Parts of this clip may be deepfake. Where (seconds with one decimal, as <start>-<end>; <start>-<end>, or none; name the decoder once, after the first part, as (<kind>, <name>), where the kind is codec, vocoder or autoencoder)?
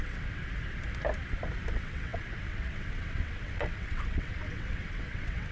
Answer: 0.0-0.4 (vocoder, WaveNeXt); 1.7-5.5